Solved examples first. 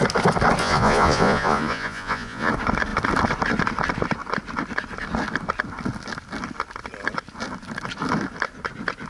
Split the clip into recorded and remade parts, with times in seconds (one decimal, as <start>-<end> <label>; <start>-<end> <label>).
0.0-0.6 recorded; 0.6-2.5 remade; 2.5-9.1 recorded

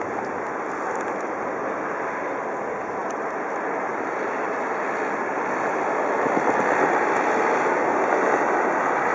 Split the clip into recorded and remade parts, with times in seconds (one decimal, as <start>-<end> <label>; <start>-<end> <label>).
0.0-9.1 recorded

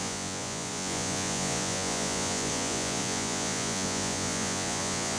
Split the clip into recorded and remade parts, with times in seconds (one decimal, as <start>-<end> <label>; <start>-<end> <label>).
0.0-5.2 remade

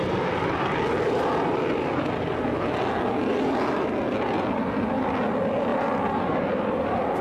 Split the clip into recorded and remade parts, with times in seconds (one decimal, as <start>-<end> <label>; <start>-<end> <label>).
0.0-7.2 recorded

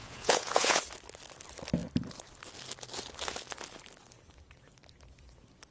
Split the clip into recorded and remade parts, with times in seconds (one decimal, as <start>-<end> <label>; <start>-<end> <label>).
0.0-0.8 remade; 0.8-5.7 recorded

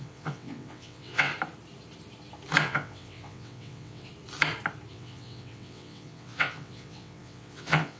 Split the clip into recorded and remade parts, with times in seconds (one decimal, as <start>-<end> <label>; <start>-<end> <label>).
0.0-1.3 remade; 1.3-2.6 recorded; 2.6-4.1 remade; 4.1-4.9 recorded; 4.9-8.0 remade